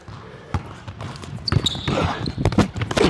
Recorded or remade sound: recorded